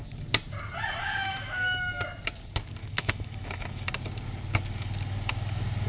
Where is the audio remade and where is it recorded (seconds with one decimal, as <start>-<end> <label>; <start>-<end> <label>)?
0.0-1.0 recorded; 1.0-1.8 remade; 1.8-2.8 recorded; 2.8-3.9 remade; 3.9-5.9 recorded